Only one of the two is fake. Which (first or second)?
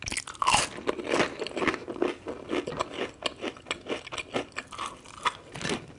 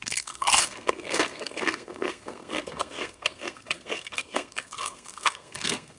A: second